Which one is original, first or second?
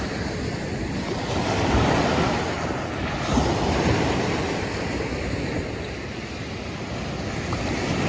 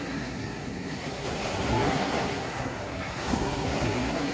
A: first